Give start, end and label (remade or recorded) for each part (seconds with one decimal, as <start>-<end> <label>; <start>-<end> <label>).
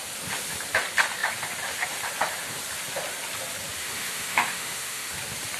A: 0.0-3.8 recorded; 3.8-5.1 remade; 5.1-5.6 recorded